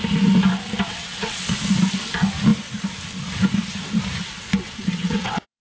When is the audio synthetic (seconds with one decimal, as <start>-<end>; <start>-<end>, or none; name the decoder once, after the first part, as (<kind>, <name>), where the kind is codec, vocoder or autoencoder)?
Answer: 0.9-1.4 (vocoder, WaveNeXt); 4.8-5.6